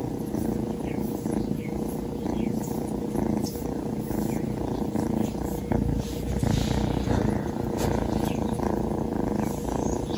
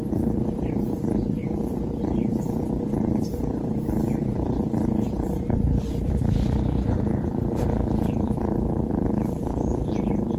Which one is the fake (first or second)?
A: second